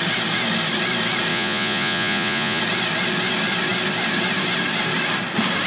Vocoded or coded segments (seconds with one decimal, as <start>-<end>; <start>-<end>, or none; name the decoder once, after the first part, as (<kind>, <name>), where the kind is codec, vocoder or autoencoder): 1.3-2.6 (vocoder, Vocos)